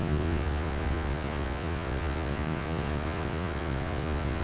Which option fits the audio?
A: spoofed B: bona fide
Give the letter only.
A